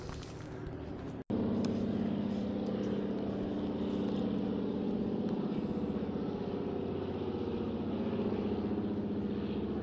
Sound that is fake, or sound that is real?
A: real